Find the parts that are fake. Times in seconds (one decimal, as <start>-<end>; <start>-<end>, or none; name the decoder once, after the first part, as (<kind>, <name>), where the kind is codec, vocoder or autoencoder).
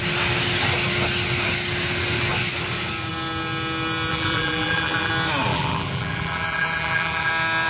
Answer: 4.1-5.1 (vocoder, BigVGAN v2); 5.5-7.3